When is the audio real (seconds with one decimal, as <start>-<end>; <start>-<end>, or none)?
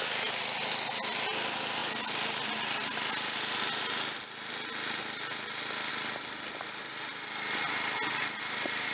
0.0-8.9